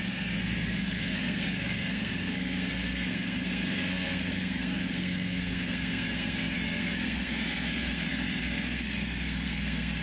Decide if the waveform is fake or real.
fake